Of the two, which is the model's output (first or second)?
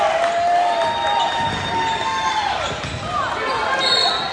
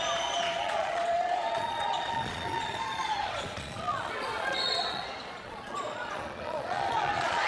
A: second